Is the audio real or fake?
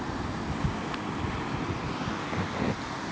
real